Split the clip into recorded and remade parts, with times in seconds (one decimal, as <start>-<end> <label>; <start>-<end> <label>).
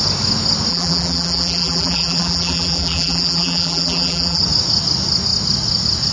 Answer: 0.0-0.7 recorded; 0.7-4.4 remade; 4.4-6.1 recorded